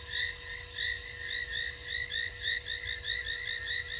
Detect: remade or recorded recorded